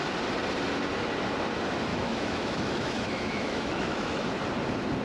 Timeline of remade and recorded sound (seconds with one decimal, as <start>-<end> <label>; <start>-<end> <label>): 0.0-1.9 recorded; 1.9-4.3 remade; 4.3-5.0 recorded